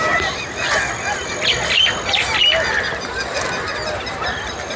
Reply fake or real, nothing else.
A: fake